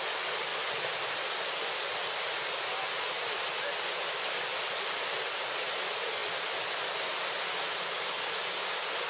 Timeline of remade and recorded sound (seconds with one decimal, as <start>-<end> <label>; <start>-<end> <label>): 0.0-0.5 recorded; 0.5-3.7 remade; 3.7-9.1 recorded